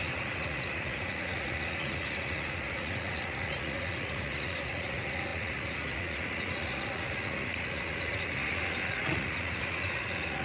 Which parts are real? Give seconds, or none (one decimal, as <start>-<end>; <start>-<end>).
none